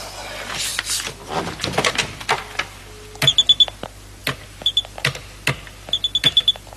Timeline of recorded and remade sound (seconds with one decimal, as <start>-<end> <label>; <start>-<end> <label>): 0.0-6.8 recorded